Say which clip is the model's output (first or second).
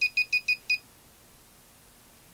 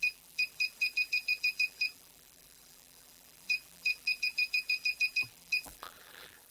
second